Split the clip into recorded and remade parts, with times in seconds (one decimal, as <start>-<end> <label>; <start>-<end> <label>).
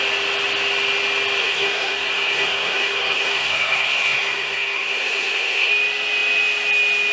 0.0-1.4 recorded; 1.4-5.7 remade; 5.7-7.1 recorded